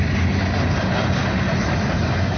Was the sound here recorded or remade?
recorded